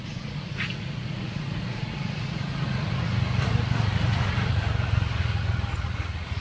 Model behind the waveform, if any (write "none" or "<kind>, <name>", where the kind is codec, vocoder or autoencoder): vocoder, Vocos